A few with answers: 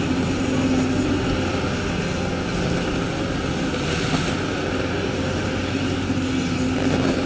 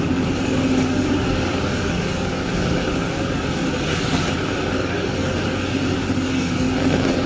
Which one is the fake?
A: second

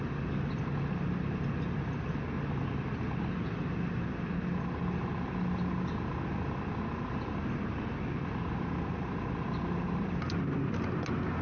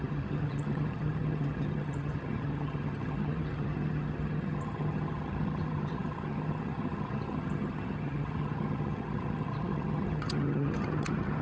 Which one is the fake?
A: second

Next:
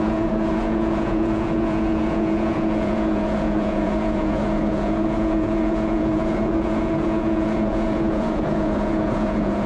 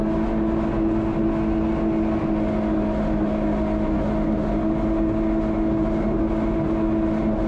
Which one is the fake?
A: first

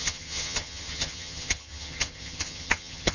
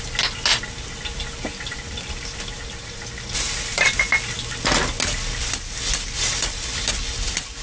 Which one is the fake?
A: first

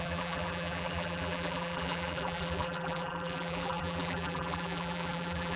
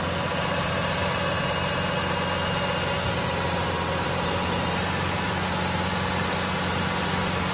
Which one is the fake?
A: first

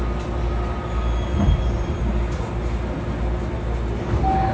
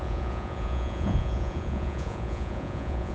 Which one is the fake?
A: second